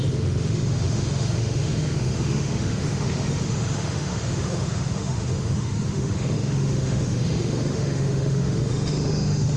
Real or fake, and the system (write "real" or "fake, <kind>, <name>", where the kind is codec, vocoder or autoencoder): fake, autoencoder, DAC-VAE